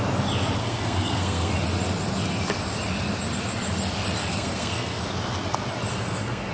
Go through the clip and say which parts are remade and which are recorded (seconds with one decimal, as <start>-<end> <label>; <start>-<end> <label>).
0.0-0.6 recorded; 0.6-1.5 remade; 1.5-4.2 recorded; 4.2-5.0 remade; 5.0-5.9 recorded; 5.9-6.5 remade